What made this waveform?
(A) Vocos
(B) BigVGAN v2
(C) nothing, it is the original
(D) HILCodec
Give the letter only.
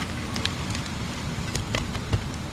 B